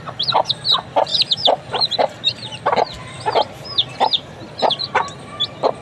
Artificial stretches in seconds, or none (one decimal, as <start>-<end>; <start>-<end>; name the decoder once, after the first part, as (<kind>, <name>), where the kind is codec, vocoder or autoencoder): 1.1-2.6 (vocoder, BigVGAN v2); 4.4-5.0